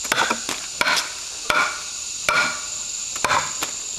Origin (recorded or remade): recorded